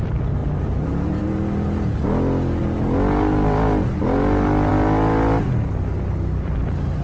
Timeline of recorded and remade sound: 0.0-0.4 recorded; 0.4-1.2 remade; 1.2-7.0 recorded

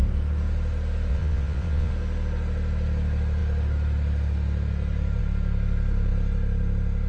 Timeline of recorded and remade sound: 0.0-1.1 recorded; 1.1-1.9 remade; 1.9-7.1 recorded

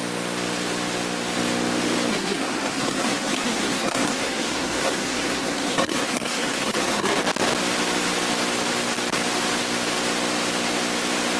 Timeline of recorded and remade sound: 0.0-2.1 recorded; 2.1-7.2 remade; 7.2-11.4 recorded

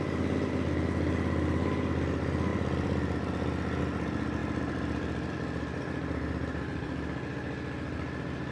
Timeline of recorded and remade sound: 0.0-2.5 recorded; 2.5-3.8 remade; 3.8-4.4 recorded; 4.4-5.3 remade; 5.3-6.0 recorded; 6.0-8.5 remade